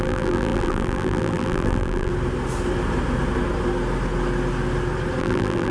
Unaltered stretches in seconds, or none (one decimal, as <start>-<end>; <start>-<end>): 2.1-5.2